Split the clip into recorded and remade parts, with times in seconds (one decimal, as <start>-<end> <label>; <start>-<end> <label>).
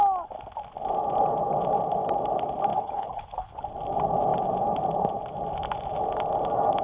0.0-2.7 recorded; 2.7-3.6 remade; 3.6-6.8 recorded